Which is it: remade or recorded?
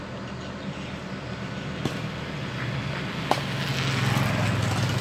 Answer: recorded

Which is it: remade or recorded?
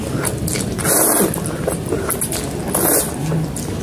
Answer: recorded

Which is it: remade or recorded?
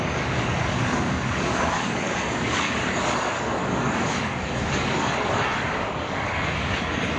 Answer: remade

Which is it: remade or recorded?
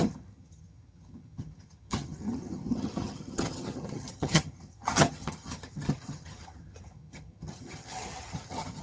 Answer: remade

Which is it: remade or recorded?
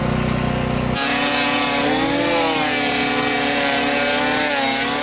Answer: recorded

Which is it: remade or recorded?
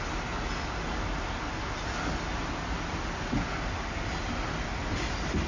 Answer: recorded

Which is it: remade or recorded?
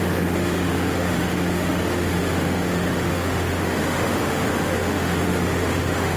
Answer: remade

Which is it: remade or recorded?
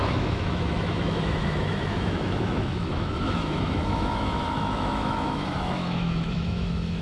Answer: remade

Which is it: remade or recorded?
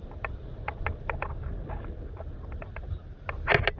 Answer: recorded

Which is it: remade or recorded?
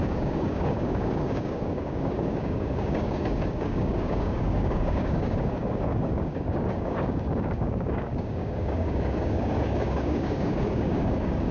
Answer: remade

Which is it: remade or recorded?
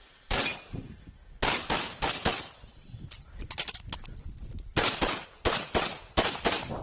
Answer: recorded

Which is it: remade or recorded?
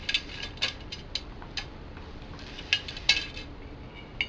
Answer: recorded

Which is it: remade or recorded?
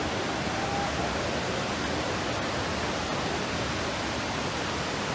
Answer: recorded